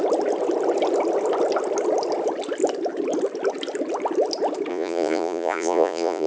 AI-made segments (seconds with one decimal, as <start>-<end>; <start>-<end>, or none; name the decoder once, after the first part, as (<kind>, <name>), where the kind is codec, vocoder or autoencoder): 4.7-6.3 (vocoder, Vocos)